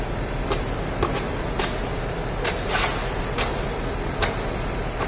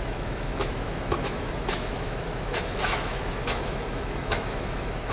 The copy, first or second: second